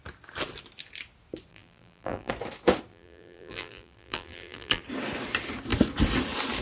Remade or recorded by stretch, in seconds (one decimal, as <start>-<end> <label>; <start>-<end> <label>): 0.0-1.5 recorded; 1.5-2.3 remade; 2.3-2.9 recorded; 2.9-4.8 remade; 4.8-6.6 recorded